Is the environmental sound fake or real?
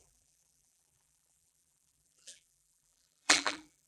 fake